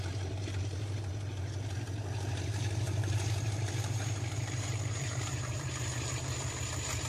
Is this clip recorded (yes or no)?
no